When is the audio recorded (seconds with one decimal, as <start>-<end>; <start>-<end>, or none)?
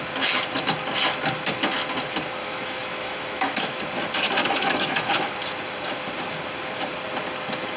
0.0-2.4; 3.8-4.4; 5.4-7.8